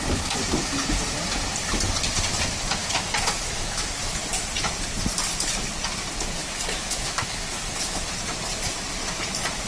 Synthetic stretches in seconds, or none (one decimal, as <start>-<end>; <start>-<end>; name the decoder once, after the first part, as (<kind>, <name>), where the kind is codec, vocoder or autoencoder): 2.8-4.2 (autoencoder, DAC-VAE); 6.4-8.1